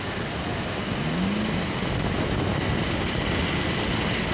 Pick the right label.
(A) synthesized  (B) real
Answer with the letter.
B